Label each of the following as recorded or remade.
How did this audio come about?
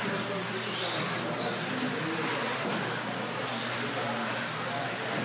recorded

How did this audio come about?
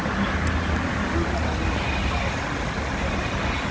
recorded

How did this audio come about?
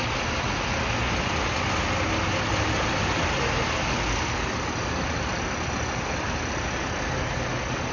recorded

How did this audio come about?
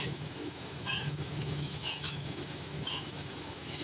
remade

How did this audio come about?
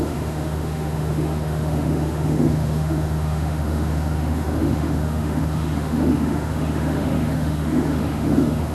remade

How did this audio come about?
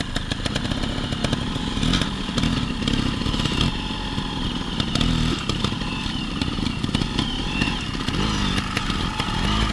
recorded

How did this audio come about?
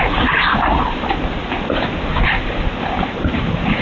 recorded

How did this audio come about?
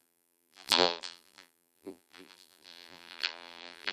remade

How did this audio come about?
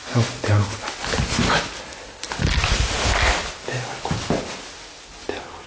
recorded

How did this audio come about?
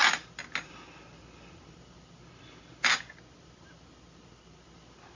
recorded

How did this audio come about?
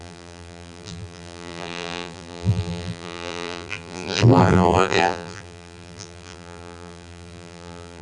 remade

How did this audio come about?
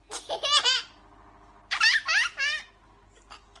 recorded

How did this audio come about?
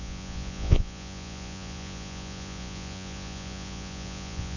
remade